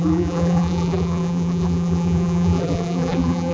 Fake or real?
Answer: fake